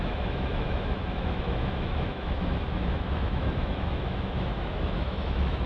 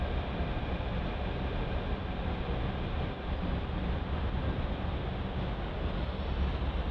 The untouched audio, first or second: second